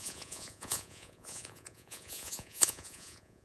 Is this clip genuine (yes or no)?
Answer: no